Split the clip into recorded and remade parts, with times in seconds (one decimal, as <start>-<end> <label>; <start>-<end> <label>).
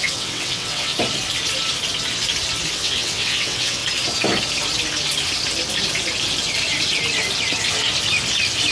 0.0-0.9 remade; 0.9-2.7 recorded; 2.7-3.8 remade; 3.8-8.7 recorded